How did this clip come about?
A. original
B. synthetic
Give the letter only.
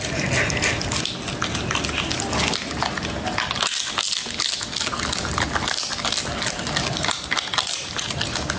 A